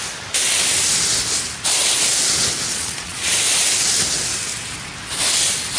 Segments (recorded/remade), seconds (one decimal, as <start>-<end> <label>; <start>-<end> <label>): 0.0-2.7 recorded; 2.7-3.3 remade; 3.3-5.8 recorded